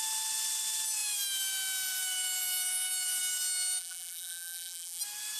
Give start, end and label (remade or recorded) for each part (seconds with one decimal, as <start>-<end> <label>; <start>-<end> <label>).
0.0-3.8 recorded; 3.8-5.0 remade; 5.0-5.4 recorded